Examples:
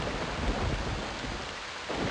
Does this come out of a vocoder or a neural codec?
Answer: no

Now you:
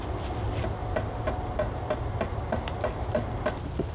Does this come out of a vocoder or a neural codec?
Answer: no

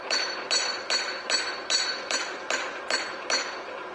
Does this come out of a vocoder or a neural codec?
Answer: no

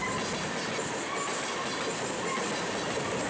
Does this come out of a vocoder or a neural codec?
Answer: no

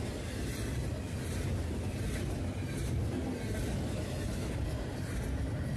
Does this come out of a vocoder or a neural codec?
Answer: no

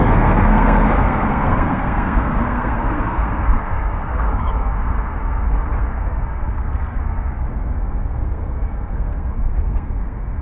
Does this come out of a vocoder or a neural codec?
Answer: yes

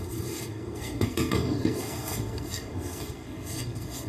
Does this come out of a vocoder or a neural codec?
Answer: yes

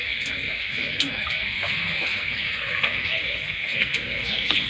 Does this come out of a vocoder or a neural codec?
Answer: yes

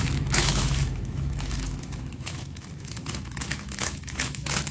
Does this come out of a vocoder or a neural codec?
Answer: yes